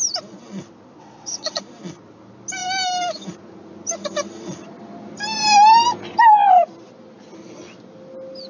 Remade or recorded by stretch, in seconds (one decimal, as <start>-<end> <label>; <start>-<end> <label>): 0.0-1.0 recorded; 1.0-1.6 remade; 1.6-8.5 recorded